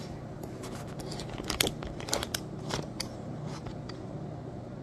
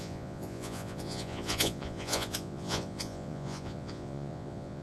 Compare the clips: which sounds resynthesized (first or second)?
second